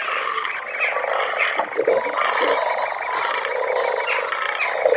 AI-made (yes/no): no